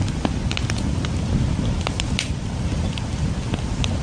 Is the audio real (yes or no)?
yes